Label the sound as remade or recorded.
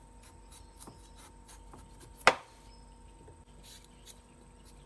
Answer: recorded